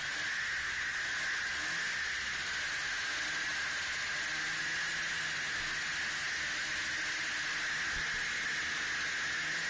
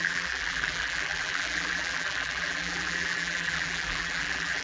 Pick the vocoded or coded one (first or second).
second